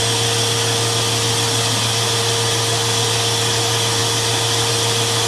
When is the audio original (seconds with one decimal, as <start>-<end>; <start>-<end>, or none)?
0.0-5.3